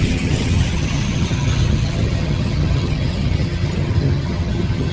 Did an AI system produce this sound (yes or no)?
yes